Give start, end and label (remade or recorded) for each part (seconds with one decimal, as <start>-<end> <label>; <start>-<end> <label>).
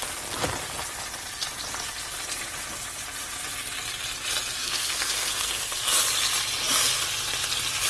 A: 0.0-4.6 recorded; 4.6-5.7 remade; 5.7-7.9 recorded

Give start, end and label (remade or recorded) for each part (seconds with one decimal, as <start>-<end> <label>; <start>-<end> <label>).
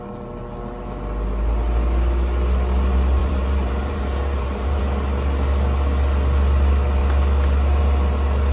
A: 0.0-3.2 recorded; 3.2-4.8 remade; 4.8-8.5 recorded